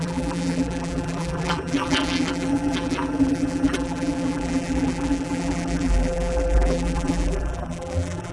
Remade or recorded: remade